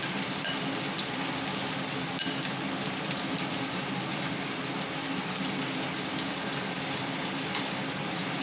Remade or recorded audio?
recorded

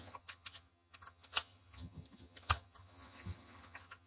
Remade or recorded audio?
remade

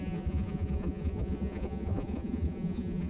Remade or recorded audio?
remade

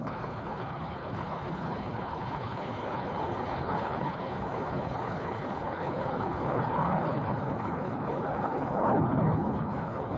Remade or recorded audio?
remade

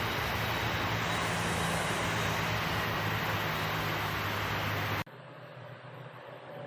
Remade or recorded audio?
recorded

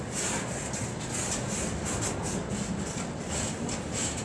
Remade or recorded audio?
recorded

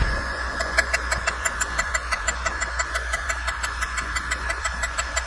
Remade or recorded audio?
remade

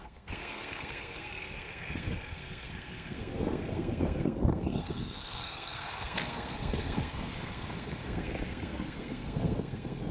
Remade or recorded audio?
remade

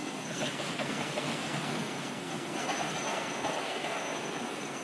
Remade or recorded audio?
remade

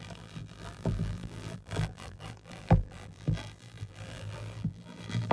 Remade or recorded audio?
remade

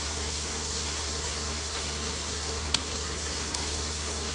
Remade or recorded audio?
remade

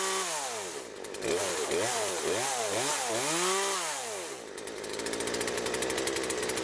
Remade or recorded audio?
recorded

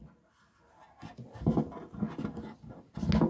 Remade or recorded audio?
recorded